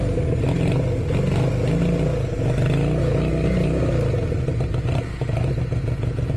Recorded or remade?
recorded